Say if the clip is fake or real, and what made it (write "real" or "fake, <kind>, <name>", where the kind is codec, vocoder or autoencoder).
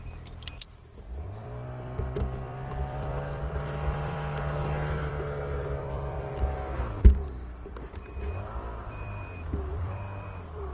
fake, vocoder, BigVGAN v2